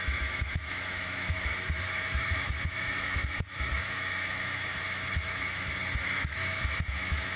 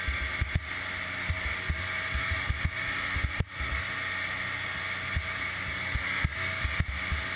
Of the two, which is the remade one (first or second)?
first